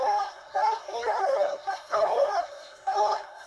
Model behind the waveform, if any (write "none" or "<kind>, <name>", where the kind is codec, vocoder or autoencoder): codec, SNAC